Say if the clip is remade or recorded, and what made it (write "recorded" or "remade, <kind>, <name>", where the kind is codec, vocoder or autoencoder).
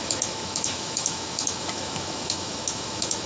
remade, autoencoder, DAC-VAE